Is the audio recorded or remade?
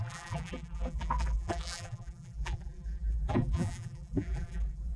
remade